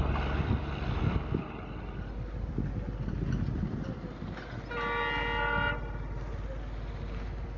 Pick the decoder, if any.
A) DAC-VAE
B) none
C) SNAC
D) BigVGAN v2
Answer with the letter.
B